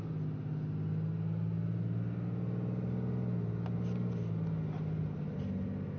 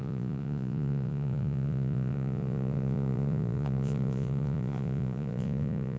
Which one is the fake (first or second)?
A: second